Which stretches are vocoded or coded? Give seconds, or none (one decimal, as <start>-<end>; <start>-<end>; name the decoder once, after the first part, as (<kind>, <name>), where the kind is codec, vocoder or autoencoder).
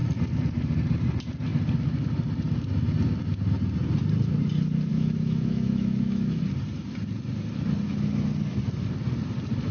4.9-6.4 (autoencoder, DAC-VAE)